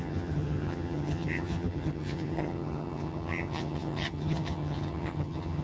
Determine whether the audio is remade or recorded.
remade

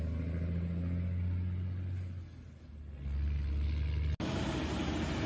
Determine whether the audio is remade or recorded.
recorded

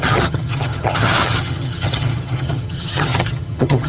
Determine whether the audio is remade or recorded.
remade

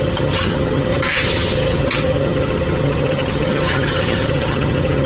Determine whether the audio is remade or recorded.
remade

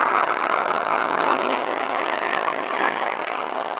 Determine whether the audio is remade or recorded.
remade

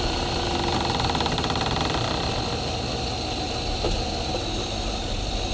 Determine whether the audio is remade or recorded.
recorded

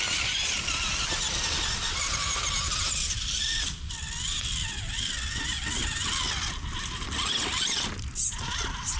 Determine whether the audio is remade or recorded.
recorded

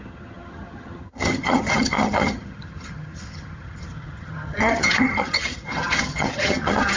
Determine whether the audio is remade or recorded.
remade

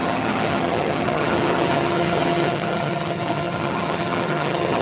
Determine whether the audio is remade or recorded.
remade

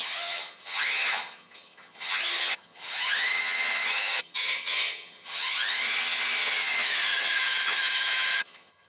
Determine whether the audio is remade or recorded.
remade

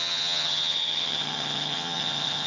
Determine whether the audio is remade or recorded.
remade